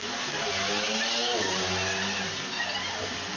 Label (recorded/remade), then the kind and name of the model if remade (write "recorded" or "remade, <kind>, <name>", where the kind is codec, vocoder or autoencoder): recorded